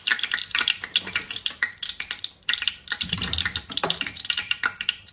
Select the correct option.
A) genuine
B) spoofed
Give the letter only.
B